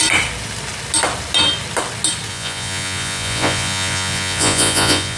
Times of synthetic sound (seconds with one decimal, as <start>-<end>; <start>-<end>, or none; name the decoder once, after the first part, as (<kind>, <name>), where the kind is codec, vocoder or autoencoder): 2.3-5.2 (vocoder, Vocos)